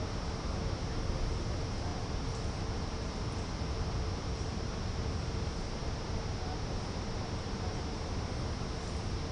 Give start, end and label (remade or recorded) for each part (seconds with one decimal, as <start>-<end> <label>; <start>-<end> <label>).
0.0-1.9 recorded; 1.9-5.3 remade; 5.3-9.3 recorded